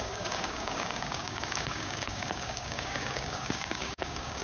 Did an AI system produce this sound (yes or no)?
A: yes